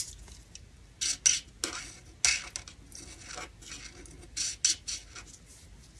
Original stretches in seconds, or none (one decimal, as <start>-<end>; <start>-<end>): 0.0-6.0